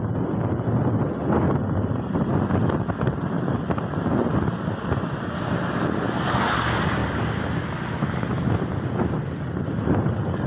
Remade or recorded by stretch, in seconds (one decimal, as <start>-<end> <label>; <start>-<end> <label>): 0.0-7.0 recorded; 7.0-7.7 remade; 7.7-10.5 recorded